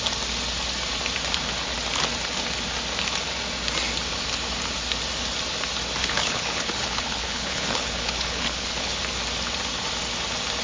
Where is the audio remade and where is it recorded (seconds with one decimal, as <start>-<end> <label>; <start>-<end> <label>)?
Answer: 0.0-6.0 recorded; 6.0-9.0 remade; 9.0-10.6 recorded